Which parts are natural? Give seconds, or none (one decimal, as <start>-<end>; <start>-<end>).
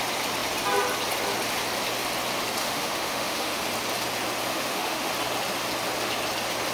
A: 0.0-2.6; 3.6-4.5; 5.1-6.7